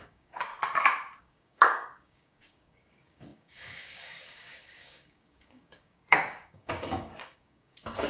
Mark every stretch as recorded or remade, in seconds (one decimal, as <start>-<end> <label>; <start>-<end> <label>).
0.0-0.5 remade; 0.5-1.2 recorded; 1.2-8.1 remade